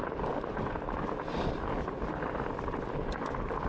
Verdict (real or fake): real